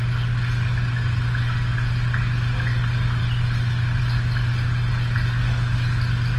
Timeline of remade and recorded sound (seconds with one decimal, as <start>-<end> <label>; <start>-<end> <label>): 0.0-6.4 recorded